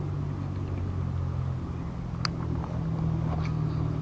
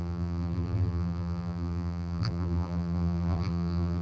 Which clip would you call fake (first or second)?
second